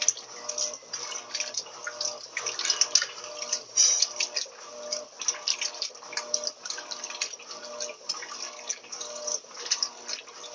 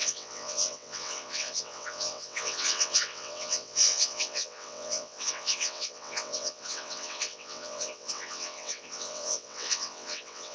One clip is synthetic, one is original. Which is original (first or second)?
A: first